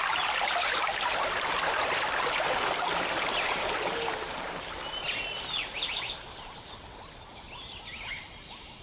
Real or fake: real